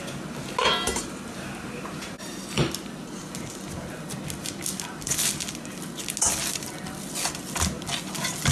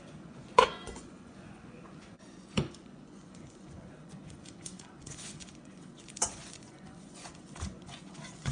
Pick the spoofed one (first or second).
second